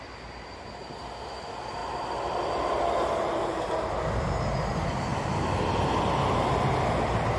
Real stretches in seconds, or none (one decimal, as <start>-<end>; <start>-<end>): 0.0-7.4